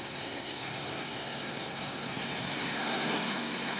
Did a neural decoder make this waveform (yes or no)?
yes